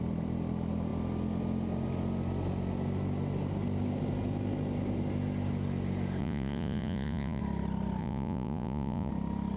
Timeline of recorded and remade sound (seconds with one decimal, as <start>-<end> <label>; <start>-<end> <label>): 0.0-6.2 recorded; 6.2-7.4 remade; 7.4-8.0 recorded; 8.0-9.1 remade; 9.1-9.6 recorded